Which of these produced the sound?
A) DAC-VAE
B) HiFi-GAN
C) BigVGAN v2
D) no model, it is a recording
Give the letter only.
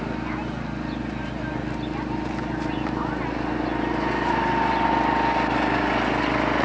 D